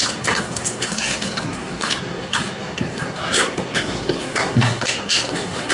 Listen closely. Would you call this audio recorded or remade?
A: remade